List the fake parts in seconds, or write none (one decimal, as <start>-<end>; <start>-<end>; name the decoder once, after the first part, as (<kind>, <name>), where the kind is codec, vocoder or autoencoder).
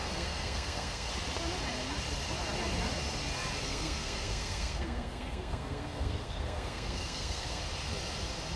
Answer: 0.0-1.1 (codec, SNAC); 3.6-7.6